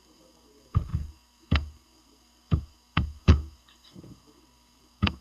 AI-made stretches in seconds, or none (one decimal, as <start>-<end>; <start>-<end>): 0.0-5.2